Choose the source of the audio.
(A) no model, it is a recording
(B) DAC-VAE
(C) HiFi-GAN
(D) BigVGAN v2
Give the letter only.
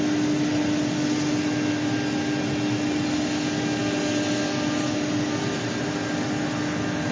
A